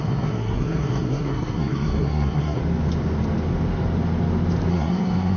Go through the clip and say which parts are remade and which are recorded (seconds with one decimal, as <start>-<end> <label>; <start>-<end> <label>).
0.0-2.6 remade; 2.6-4.7 recorded; 4.7-5.4 remade

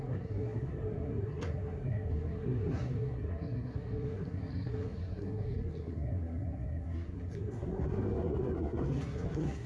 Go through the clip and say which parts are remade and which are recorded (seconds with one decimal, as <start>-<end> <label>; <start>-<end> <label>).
0.0-9.7 remade

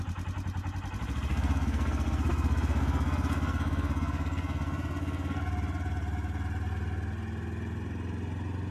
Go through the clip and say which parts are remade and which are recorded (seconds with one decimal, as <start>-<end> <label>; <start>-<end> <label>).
0.0-1.3 recorded; 1.3-5.4 remade; 5.4-8.7 recorded

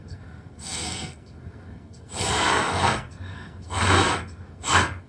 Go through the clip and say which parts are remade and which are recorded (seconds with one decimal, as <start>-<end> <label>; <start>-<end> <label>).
0.0-5.1 remade

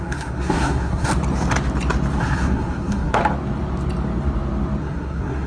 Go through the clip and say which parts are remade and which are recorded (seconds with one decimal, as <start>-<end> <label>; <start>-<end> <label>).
0.0-1.1 remade; 1.1-2.2 recorded; 2.2-3.2 remade; 3.2-4.8 recorded; 4.8-5.5 remade